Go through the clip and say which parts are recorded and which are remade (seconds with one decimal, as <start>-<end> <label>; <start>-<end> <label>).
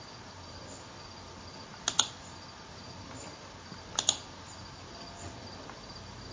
0.0-6.3 recorded